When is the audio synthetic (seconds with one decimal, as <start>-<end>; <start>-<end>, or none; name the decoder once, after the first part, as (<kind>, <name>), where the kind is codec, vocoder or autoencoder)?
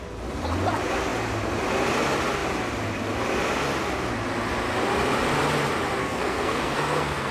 6.0-7.3 (codec, SNAC)